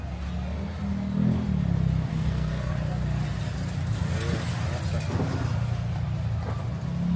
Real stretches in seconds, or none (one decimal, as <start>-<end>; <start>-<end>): 0.0-2.1; 2.7-7.2